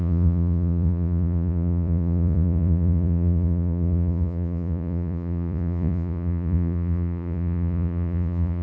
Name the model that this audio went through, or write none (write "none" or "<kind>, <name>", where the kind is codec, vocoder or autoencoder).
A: vocoder, Vocos